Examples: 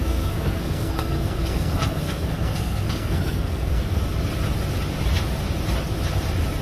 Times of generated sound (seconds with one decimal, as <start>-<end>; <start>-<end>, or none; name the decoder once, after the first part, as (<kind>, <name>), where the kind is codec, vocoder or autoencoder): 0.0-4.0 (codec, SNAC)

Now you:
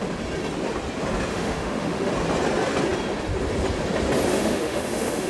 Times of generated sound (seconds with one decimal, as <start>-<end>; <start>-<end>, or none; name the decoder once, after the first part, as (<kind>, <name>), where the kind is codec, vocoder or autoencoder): 1.3-2.1 (autoencoder, DAC-VAE); 4.3-5.3

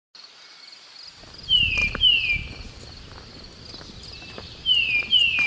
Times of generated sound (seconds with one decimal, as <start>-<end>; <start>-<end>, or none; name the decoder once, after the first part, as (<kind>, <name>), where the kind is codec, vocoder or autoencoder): none

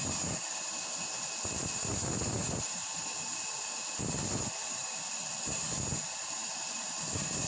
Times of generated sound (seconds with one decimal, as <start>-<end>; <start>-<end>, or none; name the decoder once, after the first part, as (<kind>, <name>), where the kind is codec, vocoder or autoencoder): 2.4-3.4 (vocoder, BigVGAN v2)

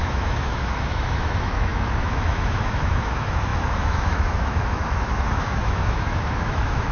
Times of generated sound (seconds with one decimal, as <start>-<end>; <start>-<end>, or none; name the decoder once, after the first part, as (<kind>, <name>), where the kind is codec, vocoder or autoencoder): 0.0-6.9 (autoencoder, DAC-VAE)